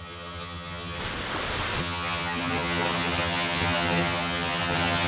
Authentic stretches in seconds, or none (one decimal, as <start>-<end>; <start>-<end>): 1.0-1.8